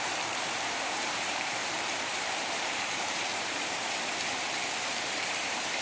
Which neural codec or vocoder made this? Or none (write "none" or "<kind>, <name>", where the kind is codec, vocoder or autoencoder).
vocoder, BigVGAN v2